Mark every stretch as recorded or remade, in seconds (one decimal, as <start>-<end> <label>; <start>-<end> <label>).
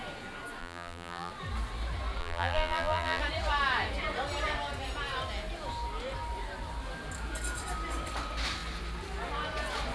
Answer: 0.0-0.6 recorded; 0.6-1.3 remade; 1.3-2.2 recorded; 2.2-3.2 remade; 3.2-9.9 recorded